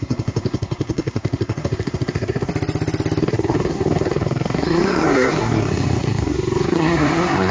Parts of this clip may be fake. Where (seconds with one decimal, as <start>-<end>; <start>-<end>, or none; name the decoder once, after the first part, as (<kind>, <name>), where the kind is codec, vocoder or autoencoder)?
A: 0.0-2.5 (codec, SNAC); 3.2-7.5